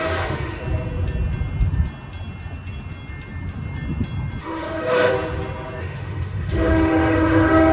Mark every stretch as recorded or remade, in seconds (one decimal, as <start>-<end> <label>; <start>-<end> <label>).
0.0-0.6 remade; 0.6-4.4 recorded; 4.4-5.1 remade; 5.1-5.8 recorded; 5.8-7.7 remade